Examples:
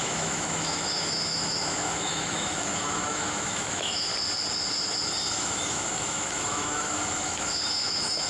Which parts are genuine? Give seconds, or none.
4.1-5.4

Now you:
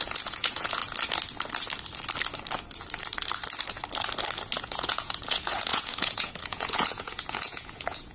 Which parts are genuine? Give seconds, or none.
0.8-4.6